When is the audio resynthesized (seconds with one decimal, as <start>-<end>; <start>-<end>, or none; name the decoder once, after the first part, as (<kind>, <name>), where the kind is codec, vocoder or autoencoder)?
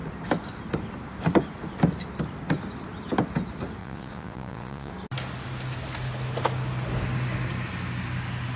3.8-4.9 (vocoder, Vocos)